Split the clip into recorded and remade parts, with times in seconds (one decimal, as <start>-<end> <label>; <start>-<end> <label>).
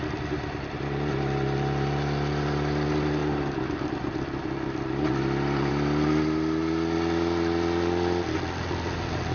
0.0-9.3 recorded